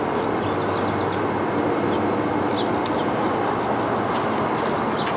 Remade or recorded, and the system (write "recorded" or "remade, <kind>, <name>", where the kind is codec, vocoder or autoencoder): recorded